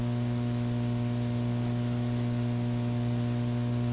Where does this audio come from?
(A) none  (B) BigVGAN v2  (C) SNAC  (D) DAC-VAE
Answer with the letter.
A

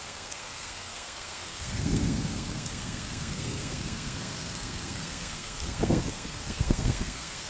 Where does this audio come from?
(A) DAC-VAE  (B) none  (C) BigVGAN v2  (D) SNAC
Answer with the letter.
D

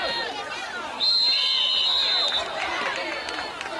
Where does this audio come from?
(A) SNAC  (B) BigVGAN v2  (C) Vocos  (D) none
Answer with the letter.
B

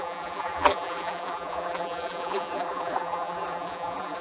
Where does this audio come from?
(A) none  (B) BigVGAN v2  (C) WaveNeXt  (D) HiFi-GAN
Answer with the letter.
B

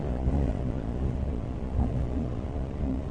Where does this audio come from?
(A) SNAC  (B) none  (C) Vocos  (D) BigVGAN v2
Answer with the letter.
C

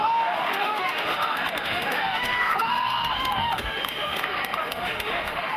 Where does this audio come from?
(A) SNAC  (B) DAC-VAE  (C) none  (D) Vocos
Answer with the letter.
B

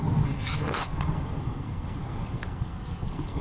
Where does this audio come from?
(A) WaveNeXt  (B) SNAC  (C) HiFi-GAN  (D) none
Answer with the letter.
B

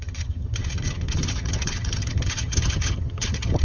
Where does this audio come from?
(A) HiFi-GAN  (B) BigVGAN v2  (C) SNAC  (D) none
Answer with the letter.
A